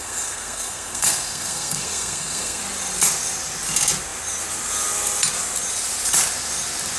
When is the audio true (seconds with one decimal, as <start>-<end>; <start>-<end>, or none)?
2.6-7.0

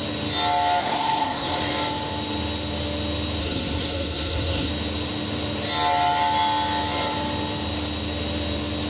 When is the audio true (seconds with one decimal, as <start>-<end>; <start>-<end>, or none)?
0.0-0.8; 1.6-3.4; 4.7-8.9